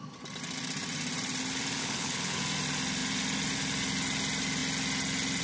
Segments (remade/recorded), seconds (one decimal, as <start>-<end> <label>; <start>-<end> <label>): 0.0-1.8 recorded; 1.8-2.4 remade; 2.4-5.4 recorded